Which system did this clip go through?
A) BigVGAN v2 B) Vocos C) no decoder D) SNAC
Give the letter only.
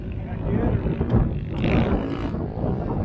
C